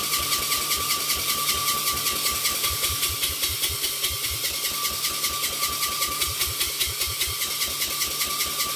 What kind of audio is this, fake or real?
real